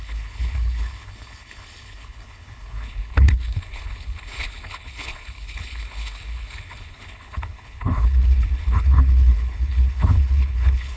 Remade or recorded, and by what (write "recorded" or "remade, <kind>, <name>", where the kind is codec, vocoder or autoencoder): remade, codec, HILCodec